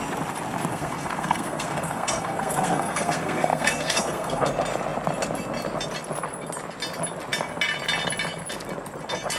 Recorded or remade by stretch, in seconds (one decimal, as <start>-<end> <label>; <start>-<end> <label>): 0.0-0.7 recorded; 0.7-4.5 remade; 4.5-9.4 recorded